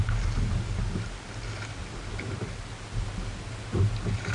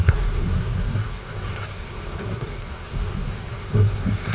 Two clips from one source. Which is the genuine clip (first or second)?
first